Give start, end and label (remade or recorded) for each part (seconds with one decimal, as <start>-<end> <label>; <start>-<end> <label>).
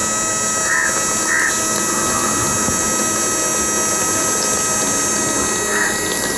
0.0-6.4 recorded